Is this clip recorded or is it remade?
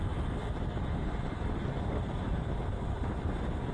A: remade